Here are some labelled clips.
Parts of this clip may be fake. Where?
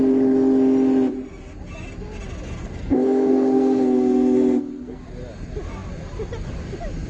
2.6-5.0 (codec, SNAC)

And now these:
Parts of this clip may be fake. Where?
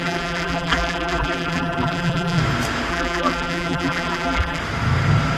0.0-2.4 (vocoder, BigVGAN v2); 2.9-4.6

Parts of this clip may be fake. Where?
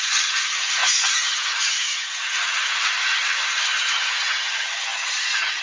0.0-5.6 (vocoder, HiFi-GAN)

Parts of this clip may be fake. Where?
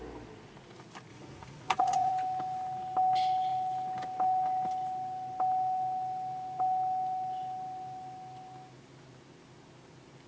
1.1-2.1 (vocoder, Vocos)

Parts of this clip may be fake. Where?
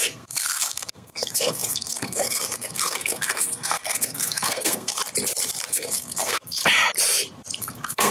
0.0-5.0 (codec, SNAC); 5.7-6.6; 7.6-8.1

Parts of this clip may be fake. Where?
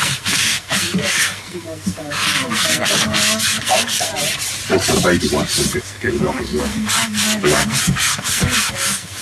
0.0-4.1 (codec, SNAC); 5.8-9.2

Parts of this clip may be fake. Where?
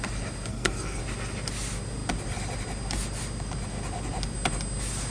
0.5-1.0 (codec, SNAC)